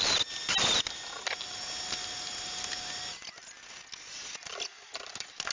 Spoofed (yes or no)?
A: no